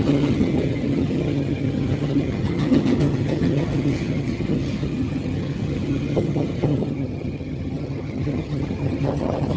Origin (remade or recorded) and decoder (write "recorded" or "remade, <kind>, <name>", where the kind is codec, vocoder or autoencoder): remade, vocoder, HiFi-GAN